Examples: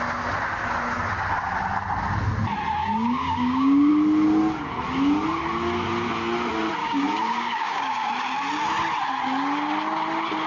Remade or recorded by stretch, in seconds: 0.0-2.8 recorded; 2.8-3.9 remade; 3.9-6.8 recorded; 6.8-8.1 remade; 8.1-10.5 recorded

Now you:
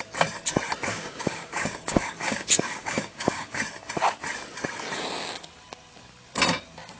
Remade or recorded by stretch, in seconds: 0.0-0.9 recorded; 0.9-3.6 remade; 3.6-7.0 recorded